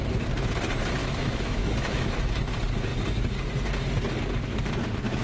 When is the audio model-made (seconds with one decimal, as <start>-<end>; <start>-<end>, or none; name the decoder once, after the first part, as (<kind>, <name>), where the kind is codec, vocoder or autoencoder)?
1.0-2.4 (autoencoder, DAC-VAE)